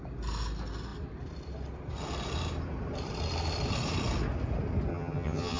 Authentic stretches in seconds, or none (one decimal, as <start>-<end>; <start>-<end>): 0.0-4.9